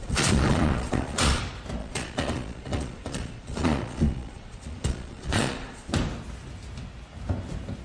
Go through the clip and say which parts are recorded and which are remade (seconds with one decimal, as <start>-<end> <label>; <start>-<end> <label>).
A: 0.0-1.4 remade; 1.4-1.8 recorded; 1.8-5.9 remade; 5.9-7.8 recorded